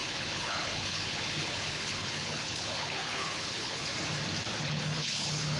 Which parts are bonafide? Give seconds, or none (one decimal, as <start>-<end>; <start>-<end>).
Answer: 3.9-4.6